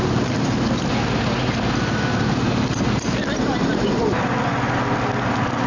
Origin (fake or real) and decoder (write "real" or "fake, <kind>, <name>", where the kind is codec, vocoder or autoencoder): real